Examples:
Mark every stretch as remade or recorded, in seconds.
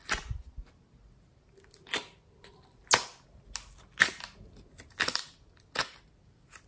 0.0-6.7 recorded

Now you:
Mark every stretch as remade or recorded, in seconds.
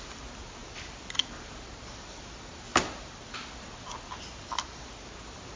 0.0-5.6 recorded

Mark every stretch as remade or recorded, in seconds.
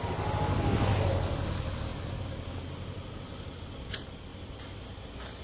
0.0-5.4 recorded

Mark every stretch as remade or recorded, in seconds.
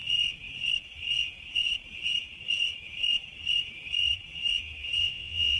0.0-5.0 recorded; 5.0-5.6 remade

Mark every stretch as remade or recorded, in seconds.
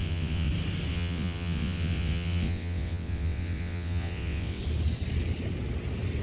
0.0-0.5 remade; 0.5-0.9 recorded; 0.9-4.6 remade; 4.6-6.2 recorded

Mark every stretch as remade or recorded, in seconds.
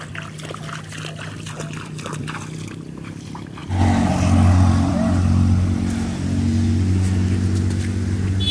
0.0-8.5 recorded